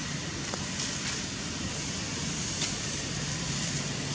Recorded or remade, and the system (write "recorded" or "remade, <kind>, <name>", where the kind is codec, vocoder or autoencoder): recorded